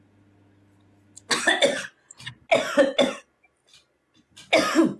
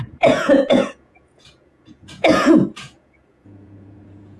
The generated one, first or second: second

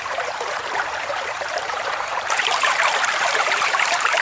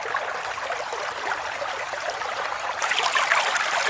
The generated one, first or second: first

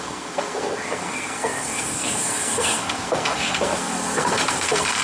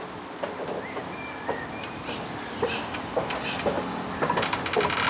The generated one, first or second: first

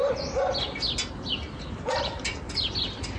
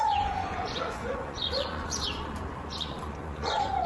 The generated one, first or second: second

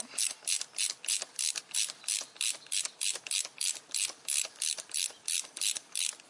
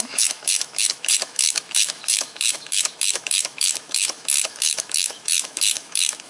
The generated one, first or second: second